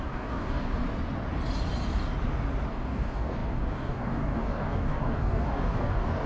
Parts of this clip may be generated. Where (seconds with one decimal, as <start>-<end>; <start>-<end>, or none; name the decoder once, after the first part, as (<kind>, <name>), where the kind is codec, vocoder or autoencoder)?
0.0-0.7 (codec, DAC); 2.7-6.3